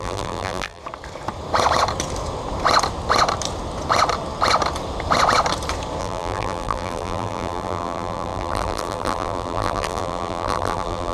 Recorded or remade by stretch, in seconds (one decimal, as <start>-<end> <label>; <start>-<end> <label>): 0.0-0.8 remade; 0.8-6.0 recorded; 6.0-11.1 remade